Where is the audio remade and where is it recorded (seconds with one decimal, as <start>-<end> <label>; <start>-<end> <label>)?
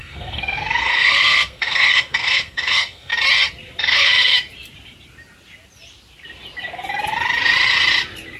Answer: 0.0-3.1 remade; 3.1-3.8 recorded; 3.8-4.3 remade; 4.3-8.4 recorded